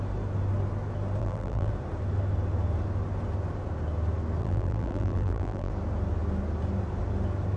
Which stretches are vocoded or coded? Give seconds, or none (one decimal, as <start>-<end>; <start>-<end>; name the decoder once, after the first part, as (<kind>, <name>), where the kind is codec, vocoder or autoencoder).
1.2-1.7 (vocoder, BigVGAN v2); 4.4-5.7